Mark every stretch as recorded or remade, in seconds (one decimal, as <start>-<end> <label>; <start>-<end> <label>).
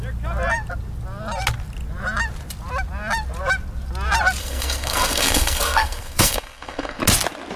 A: 0.0-4.4 recorded; 4.4-7.0 remade; 7.0-7.6 recorded